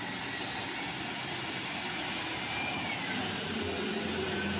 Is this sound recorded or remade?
recorded